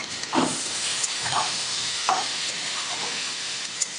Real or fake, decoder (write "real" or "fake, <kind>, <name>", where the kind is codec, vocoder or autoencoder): fake, autoencoder, DAC-VAE